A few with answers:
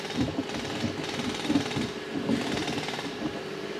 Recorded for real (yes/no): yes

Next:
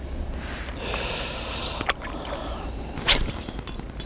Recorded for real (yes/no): yes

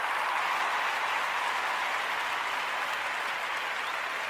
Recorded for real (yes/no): yes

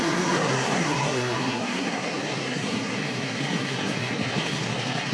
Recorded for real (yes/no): no